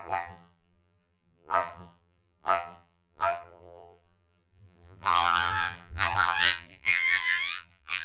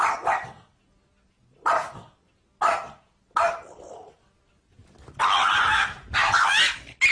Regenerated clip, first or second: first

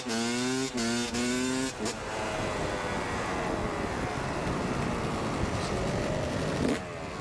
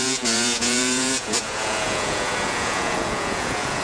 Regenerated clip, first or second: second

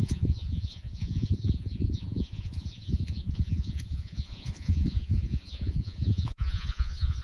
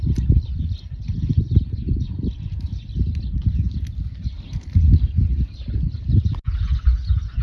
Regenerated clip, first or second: first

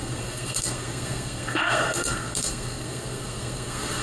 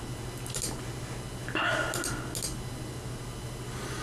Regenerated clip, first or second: first